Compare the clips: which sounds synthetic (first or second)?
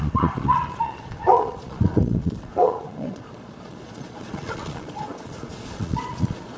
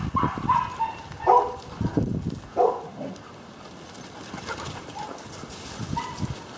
first